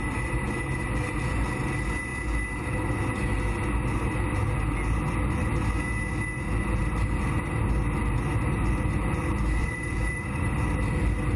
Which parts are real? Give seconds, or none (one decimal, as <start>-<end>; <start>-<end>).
0.0-9.6; 10.5-11.4